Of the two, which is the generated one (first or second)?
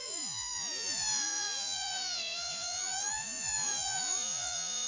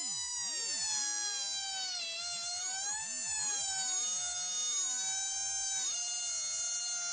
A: first